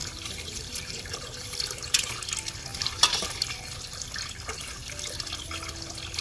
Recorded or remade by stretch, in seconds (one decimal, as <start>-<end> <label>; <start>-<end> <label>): 0.0-2.1 remade; 2.1-2.7 recorded; 2.7-3.3 remade; 3.3-6.2 recorded